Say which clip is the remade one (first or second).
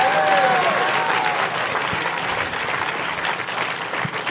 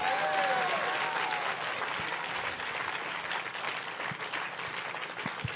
first